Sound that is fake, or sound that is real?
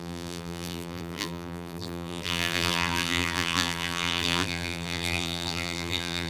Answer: fake